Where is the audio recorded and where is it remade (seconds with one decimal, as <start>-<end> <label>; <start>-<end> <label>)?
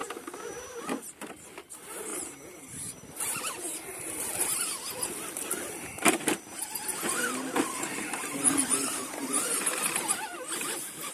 0.0-1.7 recorded; 1.7-6.9 remade; 6.9-8.0 recorded; 8.0-11.1 remade